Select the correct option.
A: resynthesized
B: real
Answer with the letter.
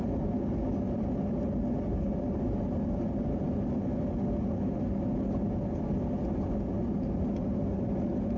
B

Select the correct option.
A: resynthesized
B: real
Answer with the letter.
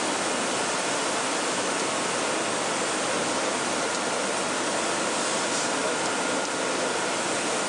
B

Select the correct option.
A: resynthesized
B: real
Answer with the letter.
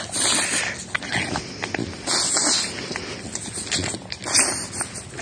B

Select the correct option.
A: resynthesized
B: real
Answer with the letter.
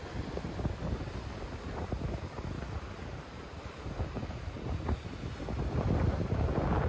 B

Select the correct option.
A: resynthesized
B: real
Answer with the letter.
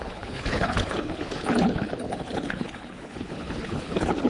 A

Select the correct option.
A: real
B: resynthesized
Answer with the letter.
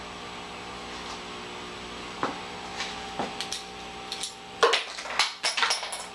A